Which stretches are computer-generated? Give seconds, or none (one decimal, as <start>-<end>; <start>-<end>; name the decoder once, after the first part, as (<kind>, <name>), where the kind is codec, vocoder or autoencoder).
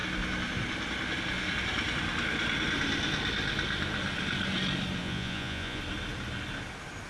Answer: 5.0-5.8 (vocoder, Vocos)